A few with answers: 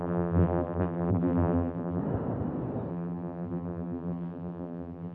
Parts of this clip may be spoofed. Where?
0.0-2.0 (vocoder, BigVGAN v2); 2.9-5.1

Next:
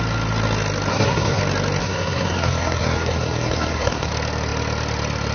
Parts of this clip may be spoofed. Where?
0.9-1.4 (codec, SNAC); 1.8-4.1

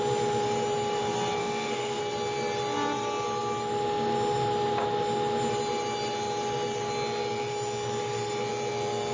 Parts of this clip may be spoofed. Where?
1.4-2.0 (codec, SNAC)

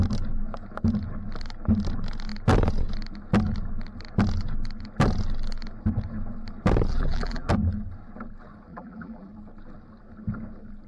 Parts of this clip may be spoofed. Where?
6.9-7.5 (vocoder, BigVGAN v2); 8.7-9.3